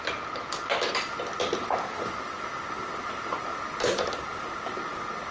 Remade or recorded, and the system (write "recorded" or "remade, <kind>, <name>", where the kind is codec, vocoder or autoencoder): recorded